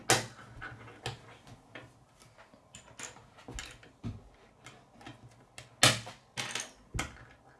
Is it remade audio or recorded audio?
recorded